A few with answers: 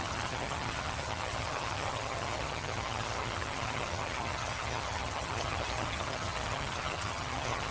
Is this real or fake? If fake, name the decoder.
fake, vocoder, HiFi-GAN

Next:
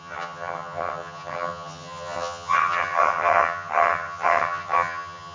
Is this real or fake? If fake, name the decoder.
fake, vocoder, HiFi-GAN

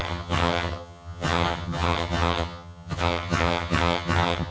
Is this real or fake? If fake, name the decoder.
fake, vocoder, HiFi-GAN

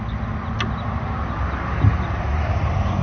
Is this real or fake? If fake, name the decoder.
real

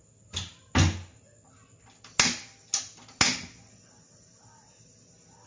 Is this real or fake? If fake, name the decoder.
real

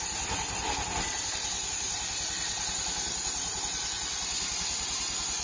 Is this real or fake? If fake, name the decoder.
real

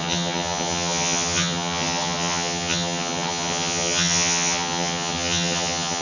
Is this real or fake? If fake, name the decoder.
fake, vocoder, HiFi-GAN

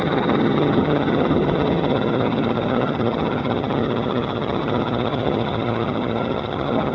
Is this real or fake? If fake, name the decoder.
fake, vocoder, HiFi-GAN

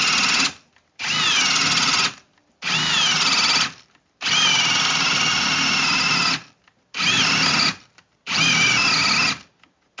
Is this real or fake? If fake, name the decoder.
real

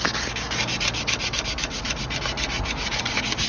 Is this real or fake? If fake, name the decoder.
real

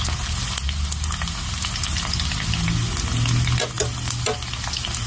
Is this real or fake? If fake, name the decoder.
real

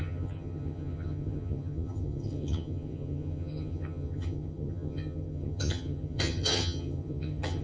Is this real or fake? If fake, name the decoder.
fake, vocoder, HiFi-GAN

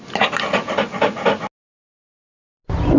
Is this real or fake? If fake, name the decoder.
real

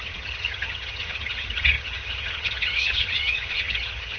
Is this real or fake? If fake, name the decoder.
fake, vocoder, HiFi-GAN